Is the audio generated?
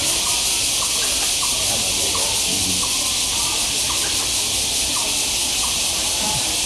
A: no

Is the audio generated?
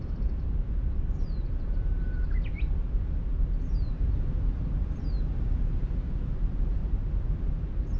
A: yes